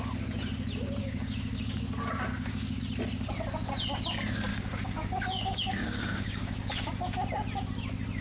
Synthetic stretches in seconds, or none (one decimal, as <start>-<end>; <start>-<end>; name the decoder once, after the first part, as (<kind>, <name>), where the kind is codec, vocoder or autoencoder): 1.0-1.8 (codec, DAC); 2.3-2.8; 4.5-6.9